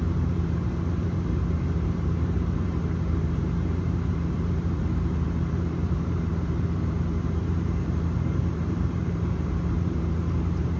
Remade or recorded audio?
remade